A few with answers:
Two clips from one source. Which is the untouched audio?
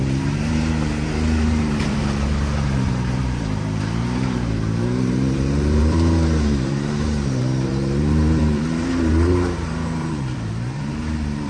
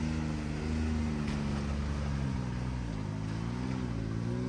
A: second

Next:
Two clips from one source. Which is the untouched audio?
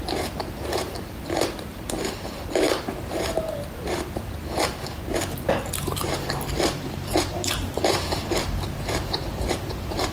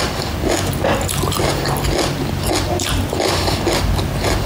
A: second